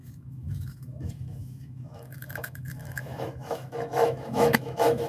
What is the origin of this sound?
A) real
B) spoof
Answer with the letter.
B